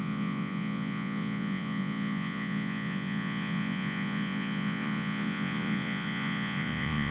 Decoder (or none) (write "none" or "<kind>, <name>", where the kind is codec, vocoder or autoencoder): vocoder, Vocos